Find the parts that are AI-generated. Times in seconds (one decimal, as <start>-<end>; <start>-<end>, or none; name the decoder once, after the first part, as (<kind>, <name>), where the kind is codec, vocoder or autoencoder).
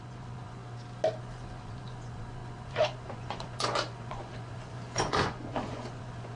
0.0-0.6 (vocoder, Vocos); 1.2-6.4